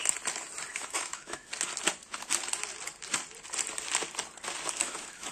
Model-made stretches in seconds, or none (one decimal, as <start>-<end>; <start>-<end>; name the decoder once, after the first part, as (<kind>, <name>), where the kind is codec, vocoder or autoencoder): 0.7-1.5 (autoencoder, DAC-VAE); 4.7-5.3